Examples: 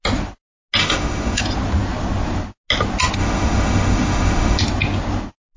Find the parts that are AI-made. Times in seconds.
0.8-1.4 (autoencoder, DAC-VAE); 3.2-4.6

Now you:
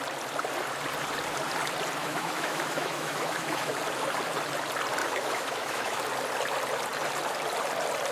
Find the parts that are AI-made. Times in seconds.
2.0-3.7 (autoencoder, DAC-VAE); 5.0-6.0

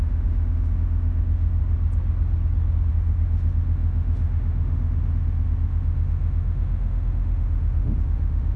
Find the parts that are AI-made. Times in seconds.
0.0-1.6 (autoencoder, DAC-VAE); 2.9-8.6

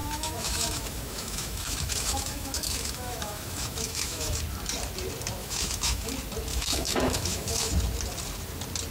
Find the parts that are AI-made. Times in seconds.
0.0-4.4 (autoencoder, DAC-VAE); 5.4-6.1; 6.5-7.7